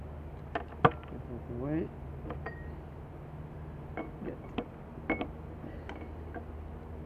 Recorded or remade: recorded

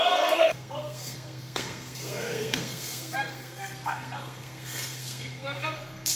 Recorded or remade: remade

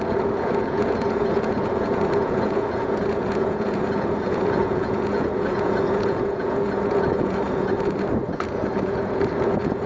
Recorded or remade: remade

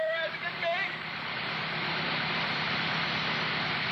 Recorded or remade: remade